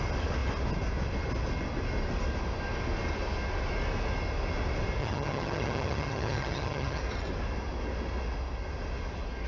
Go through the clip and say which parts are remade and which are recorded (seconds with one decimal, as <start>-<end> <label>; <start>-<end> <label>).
0.0-5.0 recorded; 5.0-7.0 remade; 7.0-9.5 recorded